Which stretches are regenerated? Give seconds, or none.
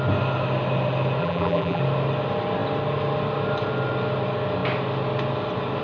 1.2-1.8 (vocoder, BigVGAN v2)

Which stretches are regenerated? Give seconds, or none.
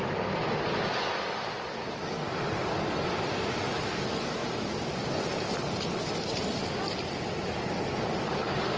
none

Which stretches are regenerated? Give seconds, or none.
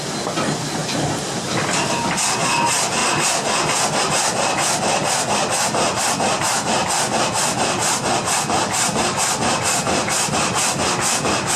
0.8-2.1 (vocoder, BigVGAN v2)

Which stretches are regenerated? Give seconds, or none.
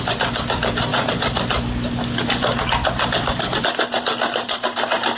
0.0-0.9 (vocoder, BigVGAN v2); 3.6-5.2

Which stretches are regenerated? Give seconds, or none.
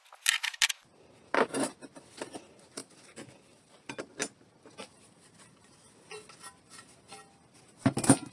2.8-3.8 (vocoder, BigVGAN v2)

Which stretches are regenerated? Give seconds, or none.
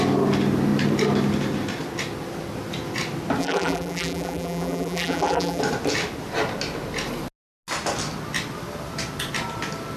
3.4-5.6 (vocoder, BigVGAN v2)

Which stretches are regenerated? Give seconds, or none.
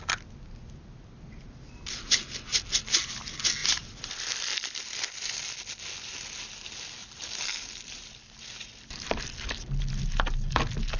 2.5-3.0 (vocoder, BigVGAN v2); 3.6-5.0; 7.0-8.4